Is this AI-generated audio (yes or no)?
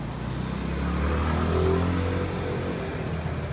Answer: no